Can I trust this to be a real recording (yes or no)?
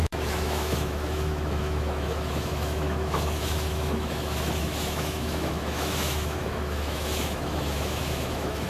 no